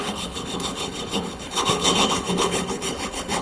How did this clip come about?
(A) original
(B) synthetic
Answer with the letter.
B